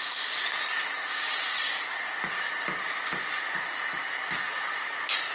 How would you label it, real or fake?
real